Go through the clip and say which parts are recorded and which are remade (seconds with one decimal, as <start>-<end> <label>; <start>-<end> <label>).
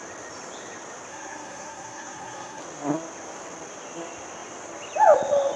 0.0-1.1 recorded; 1.1-2.6 remade; 2.6-5.6 recorded